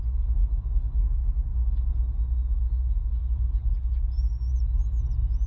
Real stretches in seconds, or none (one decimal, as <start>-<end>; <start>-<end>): 0.0-5.5